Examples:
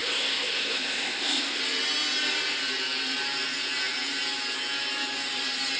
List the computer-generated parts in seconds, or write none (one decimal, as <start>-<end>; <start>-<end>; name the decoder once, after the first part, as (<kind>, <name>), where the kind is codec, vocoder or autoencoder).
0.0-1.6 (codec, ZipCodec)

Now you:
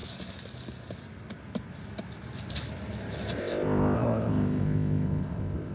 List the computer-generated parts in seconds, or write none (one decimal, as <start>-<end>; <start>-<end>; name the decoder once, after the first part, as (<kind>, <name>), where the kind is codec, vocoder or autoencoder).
3.4-5.7 (codec, ZipCodec)

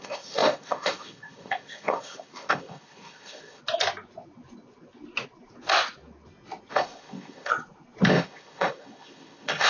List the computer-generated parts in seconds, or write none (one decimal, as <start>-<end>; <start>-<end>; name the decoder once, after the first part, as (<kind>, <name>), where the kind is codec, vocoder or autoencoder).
0.0-3.6 (codec, ZipCodec); 6.7-7.5; 8.1-9.7

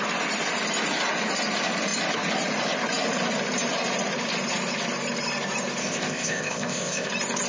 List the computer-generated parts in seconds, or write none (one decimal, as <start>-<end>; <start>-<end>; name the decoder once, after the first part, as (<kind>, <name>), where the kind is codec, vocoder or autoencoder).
5.8-7.1 (codec, ZipCodec)

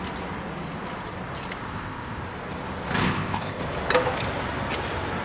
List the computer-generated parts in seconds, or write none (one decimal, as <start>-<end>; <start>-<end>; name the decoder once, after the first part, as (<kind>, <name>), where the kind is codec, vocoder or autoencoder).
1.6-2.2 (codec, ZipCodec); 3.0-3.6

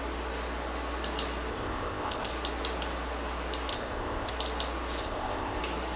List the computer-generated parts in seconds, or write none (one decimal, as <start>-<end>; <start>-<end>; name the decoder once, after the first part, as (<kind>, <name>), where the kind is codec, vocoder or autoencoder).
1.5-2.3 (codec, ZipCodec); 3.7-4.3; 5.0-5.6

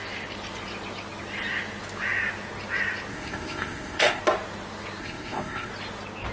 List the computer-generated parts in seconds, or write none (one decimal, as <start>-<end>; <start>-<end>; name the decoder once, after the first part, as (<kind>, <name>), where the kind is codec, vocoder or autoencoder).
3.1-4.2 (codec, ZipCodec); 5.0-5.7